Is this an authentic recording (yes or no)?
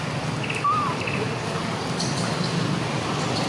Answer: yes